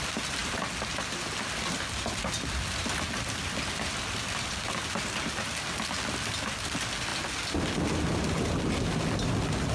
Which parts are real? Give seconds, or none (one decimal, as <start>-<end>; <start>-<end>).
0.0-9.7